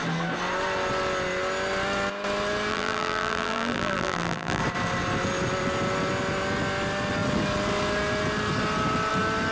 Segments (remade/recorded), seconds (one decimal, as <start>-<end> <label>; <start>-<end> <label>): 0.0-2.7 recorded; 2.7-4.6 remade; 4.6-9.5 recorded